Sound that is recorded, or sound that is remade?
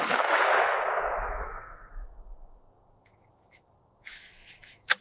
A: remade